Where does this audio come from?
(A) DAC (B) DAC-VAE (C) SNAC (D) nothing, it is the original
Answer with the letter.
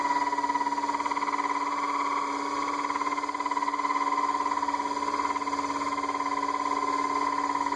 D